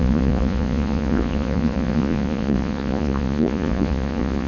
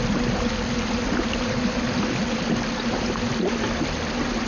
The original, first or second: second